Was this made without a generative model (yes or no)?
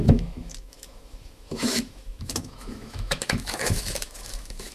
no